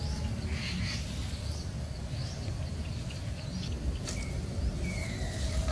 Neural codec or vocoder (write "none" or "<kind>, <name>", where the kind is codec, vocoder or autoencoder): none